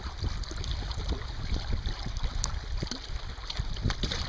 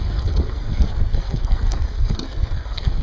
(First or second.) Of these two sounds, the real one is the first